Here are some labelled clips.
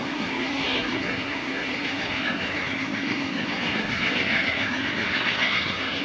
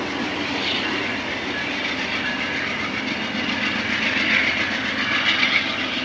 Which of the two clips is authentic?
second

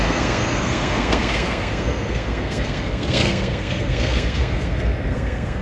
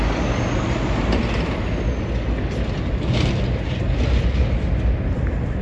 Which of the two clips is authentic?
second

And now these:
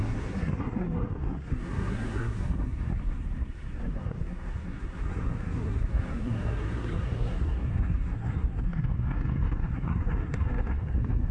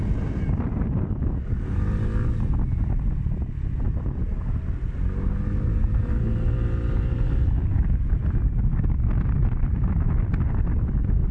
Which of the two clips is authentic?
second